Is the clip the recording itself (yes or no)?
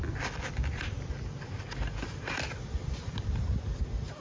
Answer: yes